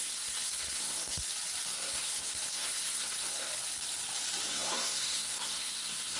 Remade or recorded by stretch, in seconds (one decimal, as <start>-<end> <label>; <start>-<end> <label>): 0.0-1.2 remade; 1.2-1.7 recorded; 1.7-3.5 remade; 3.5-4.5 recorded; 4.5-6.2 remade